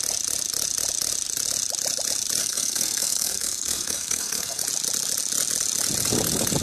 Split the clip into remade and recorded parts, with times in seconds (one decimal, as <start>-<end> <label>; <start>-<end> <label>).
0.0-2.4 recorded; 2.4-4.6 remade; 4.6-6.6 recorded